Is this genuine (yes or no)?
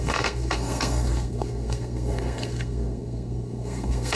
no